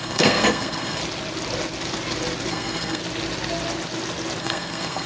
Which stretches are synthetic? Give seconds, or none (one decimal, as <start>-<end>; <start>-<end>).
0.0-1.0; 2.5-3.0; 4.4-5.1